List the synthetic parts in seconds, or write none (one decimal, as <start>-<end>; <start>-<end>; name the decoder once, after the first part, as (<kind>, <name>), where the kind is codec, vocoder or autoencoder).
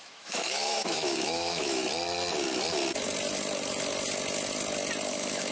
0.0-1.8 (autoencoder, DAC-VAE); 5.1-5.5